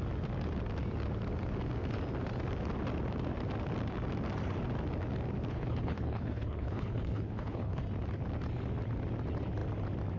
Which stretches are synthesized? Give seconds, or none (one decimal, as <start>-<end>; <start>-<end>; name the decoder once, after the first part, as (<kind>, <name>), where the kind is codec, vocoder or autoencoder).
5.5-7.8 (codec, HILCodec)

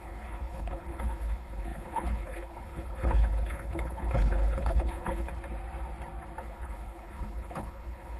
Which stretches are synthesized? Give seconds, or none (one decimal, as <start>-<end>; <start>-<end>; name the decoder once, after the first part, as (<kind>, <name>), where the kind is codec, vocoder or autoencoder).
0.0-5.3 (codec, HILCodec); 6.4-8.2

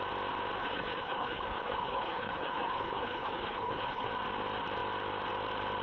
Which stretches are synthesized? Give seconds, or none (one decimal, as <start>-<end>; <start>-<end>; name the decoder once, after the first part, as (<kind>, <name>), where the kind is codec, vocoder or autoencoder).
0.6-4.1 (codec, HILCodec)

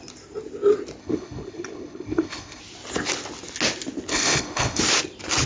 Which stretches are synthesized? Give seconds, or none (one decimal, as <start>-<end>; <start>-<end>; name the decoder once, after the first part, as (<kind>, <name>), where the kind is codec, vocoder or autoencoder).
1.0-2.6 (codec, HILCodec); 4.1-4.8

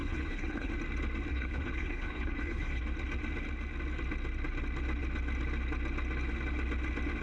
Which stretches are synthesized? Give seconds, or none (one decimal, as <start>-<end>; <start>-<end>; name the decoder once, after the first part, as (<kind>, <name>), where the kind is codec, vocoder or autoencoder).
0.0-0.7 (codec, HILCodec); 1.3-2.8